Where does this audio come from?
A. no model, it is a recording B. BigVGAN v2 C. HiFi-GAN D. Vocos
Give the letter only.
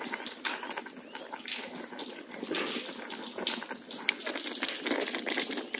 A